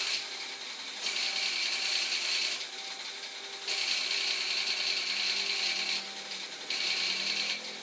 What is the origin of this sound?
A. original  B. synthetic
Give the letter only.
A